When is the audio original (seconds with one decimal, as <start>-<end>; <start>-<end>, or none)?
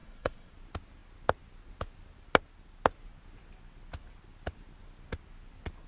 0.5-5.9